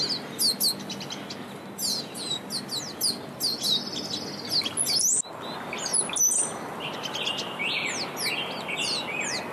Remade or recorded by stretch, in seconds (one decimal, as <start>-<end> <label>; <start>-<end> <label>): 0.0-9.5 recorded